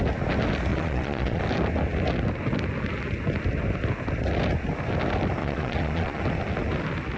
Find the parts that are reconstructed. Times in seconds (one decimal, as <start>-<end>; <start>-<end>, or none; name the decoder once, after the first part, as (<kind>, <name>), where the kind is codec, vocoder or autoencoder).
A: 0.7-1.4 (vocoder, Vocos); 5.4-6.2